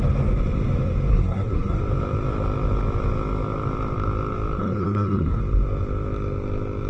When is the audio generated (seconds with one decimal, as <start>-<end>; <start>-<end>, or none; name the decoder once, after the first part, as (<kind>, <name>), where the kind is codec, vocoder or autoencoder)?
1.1-1.8 (codec, SNAC); 4.6-5.4